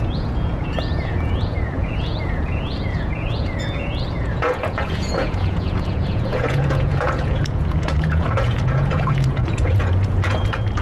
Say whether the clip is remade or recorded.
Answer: remade